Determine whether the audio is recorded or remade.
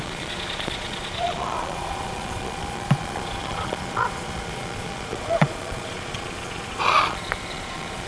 remade